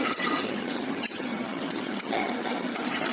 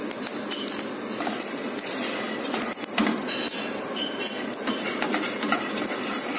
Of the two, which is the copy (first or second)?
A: first